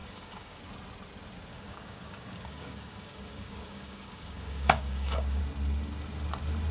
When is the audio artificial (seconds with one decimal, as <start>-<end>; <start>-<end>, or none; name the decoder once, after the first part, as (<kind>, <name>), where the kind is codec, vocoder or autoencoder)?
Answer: 0.0-0.6 (codec, DAC); 1.5-5.4